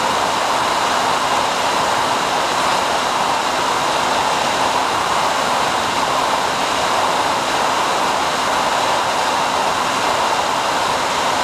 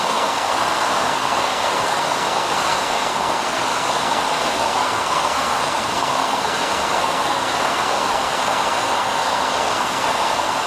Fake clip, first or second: second